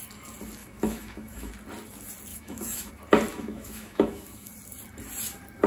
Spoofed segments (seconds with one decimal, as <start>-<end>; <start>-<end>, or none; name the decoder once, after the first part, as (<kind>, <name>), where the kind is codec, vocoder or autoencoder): 0.6-1.5 (autoencoder, DAC-VAE); 2.3-2.9; 3.3-4.5